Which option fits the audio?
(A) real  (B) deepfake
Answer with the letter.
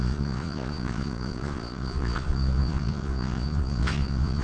B